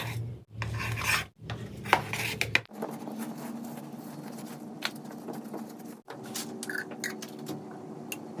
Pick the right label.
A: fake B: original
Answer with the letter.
B